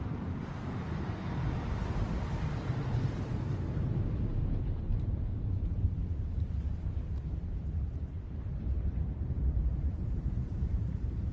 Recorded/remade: remade